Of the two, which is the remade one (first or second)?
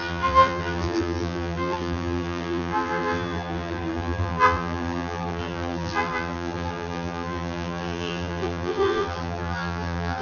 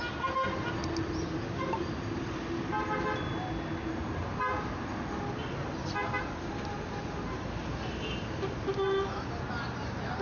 first